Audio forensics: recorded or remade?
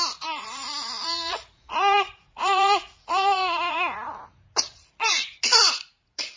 remade